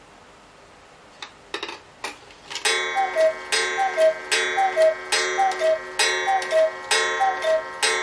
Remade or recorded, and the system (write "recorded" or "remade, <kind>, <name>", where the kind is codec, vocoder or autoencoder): recorded